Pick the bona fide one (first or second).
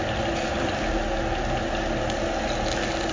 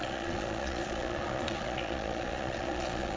first